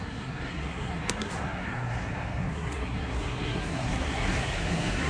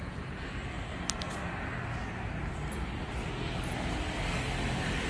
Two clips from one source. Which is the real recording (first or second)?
second